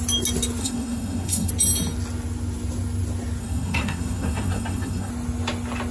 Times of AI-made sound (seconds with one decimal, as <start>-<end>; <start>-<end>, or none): 0.6-1.5; 3.4-5.1